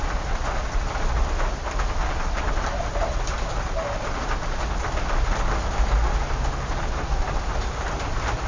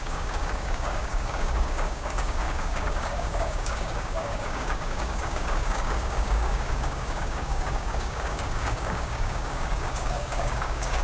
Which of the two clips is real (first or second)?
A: first